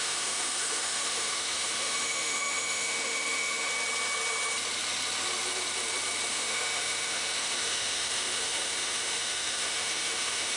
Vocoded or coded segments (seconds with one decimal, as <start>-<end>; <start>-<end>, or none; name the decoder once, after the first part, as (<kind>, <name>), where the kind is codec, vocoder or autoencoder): 0.0-3.7 (autoencoder, DAC-VAE); 6.3-10.6

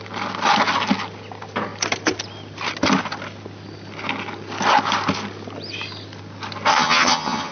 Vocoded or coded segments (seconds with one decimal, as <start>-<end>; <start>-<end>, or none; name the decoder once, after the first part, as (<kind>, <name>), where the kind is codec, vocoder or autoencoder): 6.7-7.5 (vocoder, HiFi-GAN)

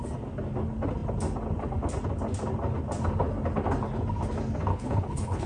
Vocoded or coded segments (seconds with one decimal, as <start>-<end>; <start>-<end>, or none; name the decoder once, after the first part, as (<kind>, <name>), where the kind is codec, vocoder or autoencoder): 4.7-5.5 (codec, HILCodec)

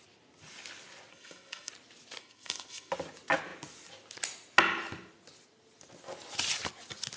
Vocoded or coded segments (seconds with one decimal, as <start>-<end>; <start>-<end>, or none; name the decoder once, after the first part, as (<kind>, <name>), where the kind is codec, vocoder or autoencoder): 1.1-1.7 (codec, SNAC); 2.2-2.9